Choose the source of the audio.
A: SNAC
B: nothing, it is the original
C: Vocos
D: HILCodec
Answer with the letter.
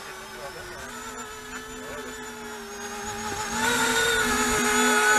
B